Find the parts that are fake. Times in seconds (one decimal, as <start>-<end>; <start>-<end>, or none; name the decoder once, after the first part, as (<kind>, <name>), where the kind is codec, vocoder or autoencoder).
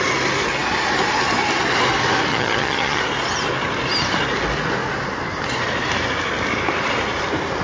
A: 2.3-3.0 (vocoder, HiFi-GAN)